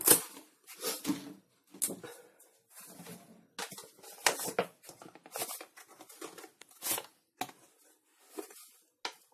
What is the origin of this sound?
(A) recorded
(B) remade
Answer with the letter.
A